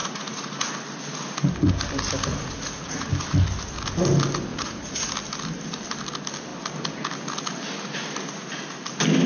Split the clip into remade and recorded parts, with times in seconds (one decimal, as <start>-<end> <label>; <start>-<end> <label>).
0.0-0.7 remade; 0.7-2.3 recorded; 2.3-3.1 remade; 3.1-4.5 recorded; 4.5-5.1 remade; 5.1-9.3 recorded